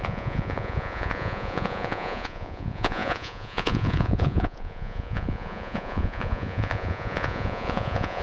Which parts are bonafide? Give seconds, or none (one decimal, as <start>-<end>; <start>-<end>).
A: none